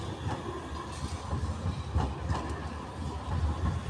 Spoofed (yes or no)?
no